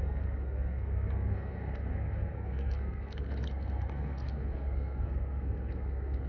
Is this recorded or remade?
remade